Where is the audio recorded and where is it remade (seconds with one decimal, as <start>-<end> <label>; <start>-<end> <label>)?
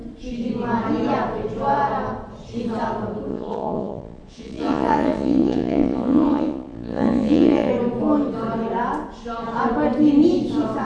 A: 0.0-3.3 recorded; 3.3-7.7 remade; 7.7-10.8 recorded